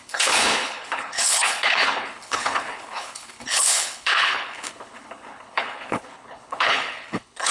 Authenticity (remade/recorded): remade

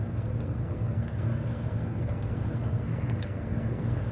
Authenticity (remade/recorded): remade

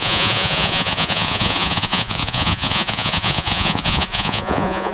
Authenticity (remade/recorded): remade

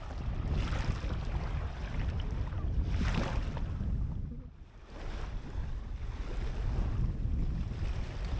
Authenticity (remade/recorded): recorded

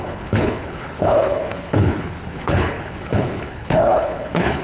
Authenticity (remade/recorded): remade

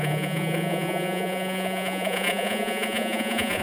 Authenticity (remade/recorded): remade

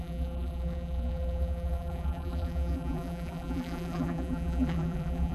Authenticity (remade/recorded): remade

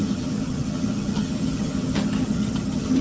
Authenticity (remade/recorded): remade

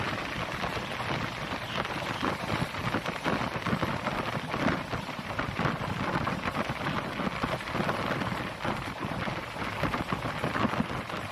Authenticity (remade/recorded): recorded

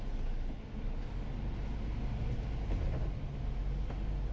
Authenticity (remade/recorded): recorded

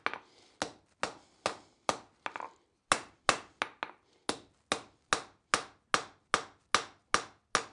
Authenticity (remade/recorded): recorded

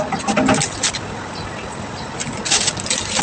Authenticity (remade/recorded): recorded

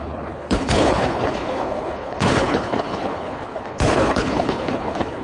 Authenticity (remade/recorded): remade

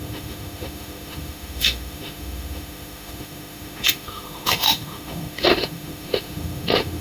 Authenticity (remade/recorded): remade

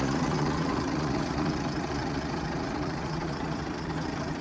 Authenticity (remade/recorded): remade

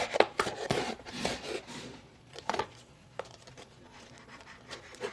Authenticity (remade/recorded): remade